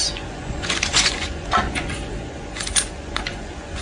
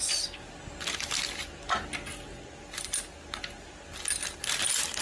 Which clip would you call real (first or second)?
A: second